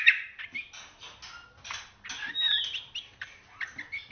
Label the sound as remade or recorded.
recorded